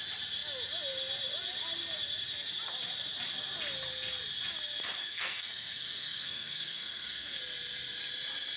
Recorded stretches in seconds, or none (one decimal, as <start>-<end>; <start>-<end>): 0.0-5.0; 7.4-8.6